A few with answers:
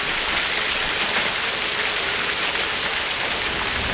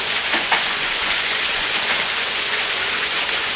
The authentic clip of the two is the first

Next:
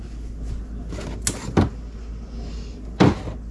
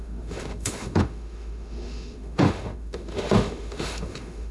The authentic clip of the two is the first